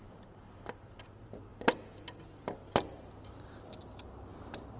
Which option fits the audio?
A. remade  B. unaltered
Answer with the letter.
B